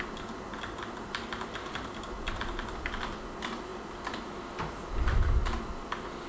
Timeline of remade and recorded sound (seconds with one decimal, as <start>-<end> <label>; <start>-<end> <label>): 0.0-6.3 recorded